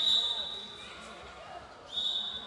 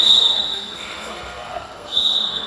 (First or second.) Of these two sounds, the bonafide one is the first